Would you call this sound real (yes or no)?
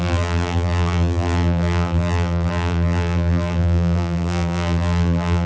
no